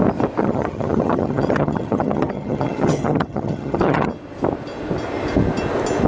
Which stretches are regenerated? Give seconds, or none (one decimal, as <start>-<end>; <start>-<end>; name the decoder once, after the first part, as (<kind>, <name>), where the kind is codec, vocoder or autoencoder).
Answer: 0.4-4.1 (vocoder, HiFi-GAN)